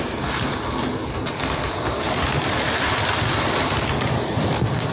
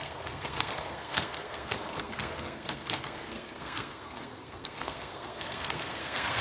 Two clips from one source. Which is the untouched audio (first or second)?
first